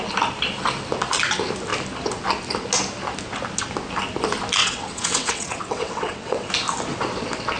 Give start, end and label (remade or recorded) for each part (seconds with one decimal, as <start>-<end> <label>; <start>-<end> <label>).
0.0-4.6 recorded; 4.6-6.5 remade; 6.5-7.6 recorded